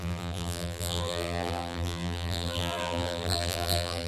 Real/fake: fake